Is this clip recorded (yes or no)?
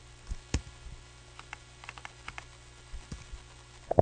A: yes